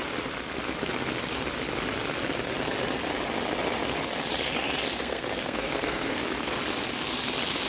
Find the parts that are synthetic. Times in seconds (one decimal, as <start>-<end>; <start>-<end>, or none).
5.0-6.2